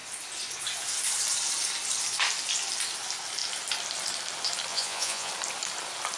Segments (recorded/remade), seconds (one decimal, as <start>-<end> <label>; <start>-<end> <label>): 0.0-4.7 recorded; 4.7-5.3 remade; 5.3-6.2 recorded